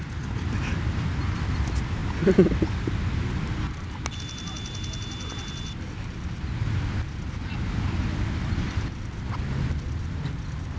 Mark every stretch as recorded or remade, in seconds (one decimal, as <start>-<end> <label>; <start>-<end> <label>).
0.0-2.0 remade; 2.0-6.4 recorded; 6.4-10.8 remade